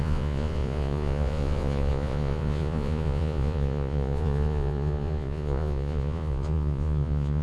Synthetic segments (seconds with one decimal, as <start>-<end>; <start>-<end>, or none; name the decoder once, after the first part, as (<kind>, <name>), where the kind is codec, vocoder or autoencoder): 0.0-7.4 (vocoder, Vocos)